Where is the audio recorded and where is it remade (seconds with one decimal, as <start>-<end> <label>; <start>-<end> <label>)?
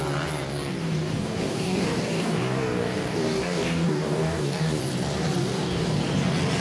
0.0-0.8 recorded; 0.8-4.8 remade; 4.8-5.4 recorded; 5.4-6.0 remade; 6.0-6.6 recorded